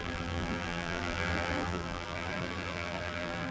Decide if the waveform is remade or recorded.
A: remade